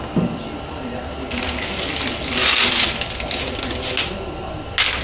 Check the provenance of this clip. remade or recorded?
recorded